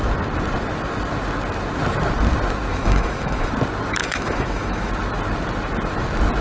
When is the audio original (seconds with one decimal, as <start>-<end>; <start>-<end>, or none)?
0.0-2.7; 3.5-4.0; 4.9-6.4